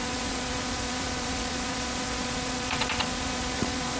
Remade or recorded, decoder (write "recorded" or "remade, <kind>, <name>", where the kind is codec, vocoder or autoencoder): remade, vocoder, Vocos